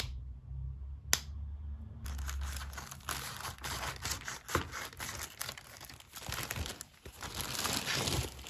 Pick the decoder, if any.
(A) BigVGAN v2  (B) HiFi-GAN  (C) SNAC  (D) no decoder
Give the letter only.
D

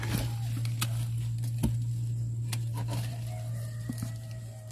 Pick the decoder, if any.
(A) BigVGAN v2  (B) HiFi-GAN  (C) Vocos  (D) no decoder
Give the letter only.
D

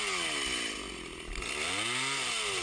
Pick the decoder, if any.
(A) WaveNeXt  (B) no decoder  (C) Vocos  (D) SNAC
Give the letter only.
B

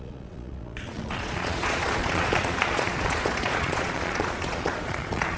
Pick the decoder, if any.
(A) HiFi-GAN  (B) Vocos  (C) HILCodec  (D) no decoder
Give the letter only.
B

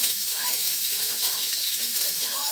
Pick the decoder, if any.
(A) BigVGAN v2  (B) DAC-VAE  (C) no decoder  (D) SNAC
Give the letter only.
B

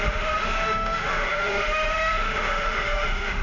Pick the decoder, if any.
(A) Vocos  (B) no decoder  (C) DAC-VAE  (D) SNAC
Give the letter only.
C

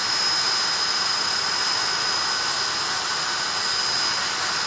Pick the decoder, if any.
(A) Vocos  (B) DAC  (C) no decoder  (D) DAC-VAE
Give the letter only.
C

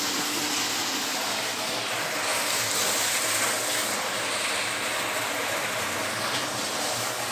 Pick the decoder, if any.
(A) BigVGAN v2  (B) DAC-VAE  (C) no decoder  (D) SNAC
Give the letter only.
C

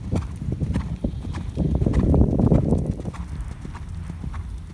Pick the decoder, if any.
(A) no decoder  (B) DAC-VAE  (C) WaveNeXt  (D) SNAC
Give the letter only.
A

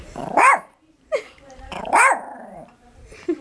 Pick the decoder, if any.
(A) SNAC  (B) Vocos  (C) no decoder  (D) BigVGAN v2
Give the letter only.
D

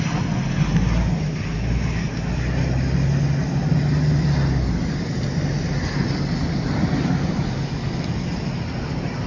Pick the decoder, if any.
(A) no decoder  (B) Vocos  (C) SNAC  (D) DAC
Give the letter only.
A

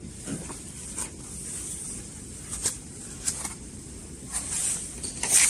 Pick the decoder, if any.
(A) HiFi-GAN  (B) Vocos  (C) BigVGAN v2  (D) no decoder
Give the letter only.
C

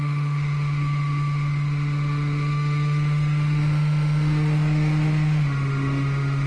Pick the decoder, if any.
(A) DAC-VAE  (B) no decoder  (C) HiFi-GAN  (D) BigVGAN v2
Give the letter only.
A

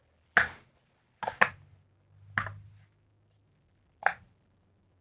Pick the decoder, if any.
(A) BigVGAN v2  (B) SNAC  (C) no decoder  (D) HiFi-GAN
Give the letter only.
C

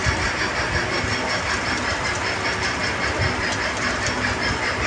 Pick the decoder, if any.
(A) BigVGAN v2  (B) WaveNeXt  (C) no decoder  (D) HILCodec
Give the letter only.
A